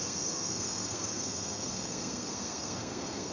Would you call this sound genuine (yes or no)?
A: no